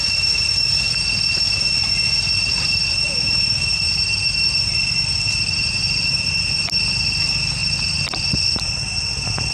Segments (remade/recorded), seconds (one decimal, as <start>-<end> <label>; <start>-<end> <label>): 0.0-3.7 recorded; 3.7-6.1 remade; 6.1-7.6 recorded; 7.6-8.2 remade; 8.2-9.5 recorded